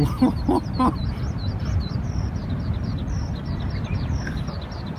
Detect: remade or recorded recorded